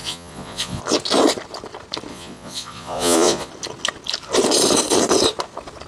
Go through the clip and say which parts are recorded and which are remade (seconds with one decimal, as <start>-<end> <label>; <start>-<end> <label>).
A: 0.0-0.8 remade; 0.8-2.1 recorded; 2.1-3.5 remade; 3.5-5.9 recorded